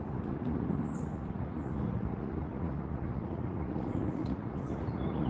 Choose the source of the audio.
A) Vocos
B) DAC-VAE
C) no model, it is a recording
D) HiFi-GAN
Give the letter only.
A